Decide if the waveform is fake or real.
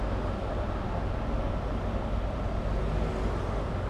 real